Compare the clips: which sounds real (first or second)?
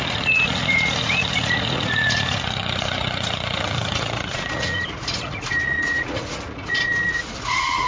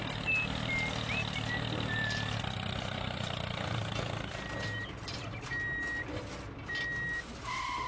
second